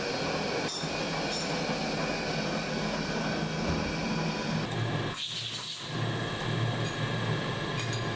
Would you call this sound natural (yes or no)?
yes